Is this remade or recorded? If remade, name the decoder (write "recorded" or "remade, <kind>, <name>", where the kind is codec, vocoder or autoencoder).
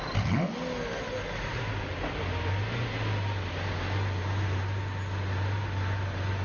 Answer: recorded